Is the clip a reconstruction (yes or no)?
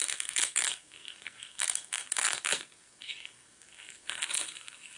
yes